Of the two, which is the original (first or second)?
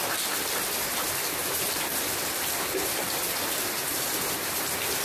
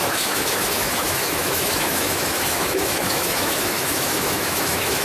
first